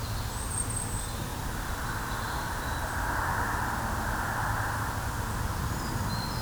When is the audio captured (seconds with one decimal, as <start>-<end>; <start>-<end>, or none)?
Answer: 0.0-6.4